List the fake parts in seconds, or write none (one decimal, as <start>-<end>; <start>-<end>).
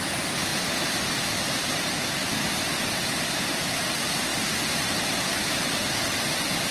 4.3-5.9